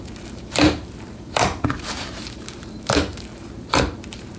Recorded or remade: remade